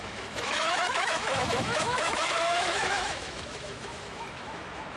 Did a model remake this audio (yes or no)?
yes